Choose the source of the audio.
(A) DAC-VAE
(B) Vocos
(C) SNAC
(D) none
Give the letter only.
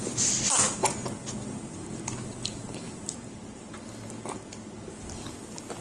D